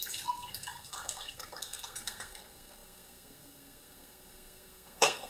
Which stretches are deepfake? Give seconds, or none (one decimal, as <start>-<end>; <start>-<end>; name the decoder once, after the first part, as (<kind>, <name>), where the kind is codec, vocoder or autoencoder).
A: 0.0-5.3 (codec, SNAC)